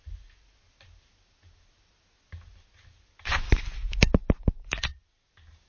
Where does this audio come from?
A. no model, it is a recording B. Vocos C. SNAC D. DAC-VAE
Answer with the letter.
A